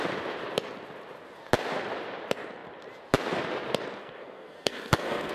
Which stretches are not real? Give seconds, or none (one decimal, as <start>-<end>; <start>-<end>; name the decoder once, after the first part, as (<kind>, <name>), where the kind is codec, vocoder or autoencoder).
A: 4.0-5.3 (codec, SNAC)